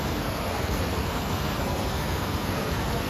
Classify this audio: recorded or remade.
remade